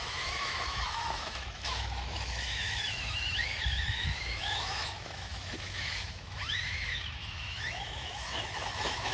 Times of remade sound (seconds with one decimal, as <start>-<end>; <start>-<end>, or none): 0.0-9.1